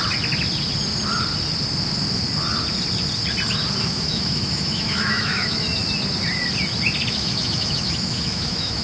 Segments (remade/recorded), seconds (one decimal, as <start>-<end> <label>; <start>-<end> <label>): 0.0-3.8 recorded; 3.8-5.8 remade; 5.8-7.1 recorded; 7.1-8.8 remade